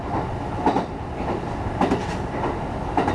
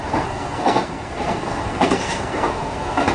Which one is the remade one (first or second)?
second